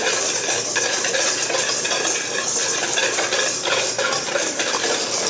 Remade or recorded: recorded